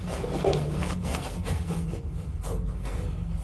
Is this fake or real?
fake